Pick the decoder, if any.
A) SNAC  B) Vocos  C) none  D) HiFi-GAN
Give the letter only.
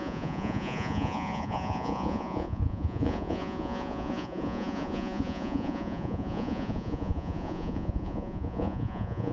B